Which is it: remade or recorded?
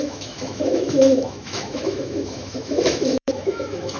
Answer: remade